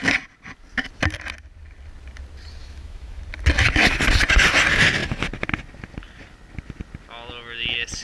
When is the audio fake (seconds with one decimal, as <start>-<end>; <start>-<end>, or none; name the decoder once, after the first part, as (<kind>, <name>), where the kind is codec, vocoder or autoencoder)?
2.6-3.2 (autoencoder, DAC-VAE)